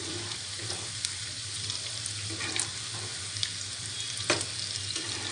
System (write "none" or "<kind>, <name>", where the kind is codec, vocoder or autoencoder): none